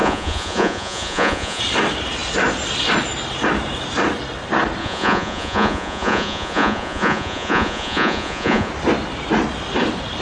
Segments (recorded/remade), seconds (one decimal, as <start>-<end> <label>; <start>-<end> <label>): 0.0-1.6 remade; 1.6-4.8 recorded; 4.8-8.7 remade; 8.7-10.2 recorded